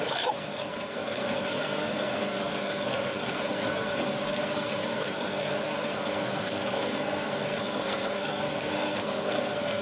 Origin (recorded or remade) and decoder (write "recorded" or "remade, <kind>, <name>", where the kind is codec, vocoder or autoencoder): remade, codec, SNAC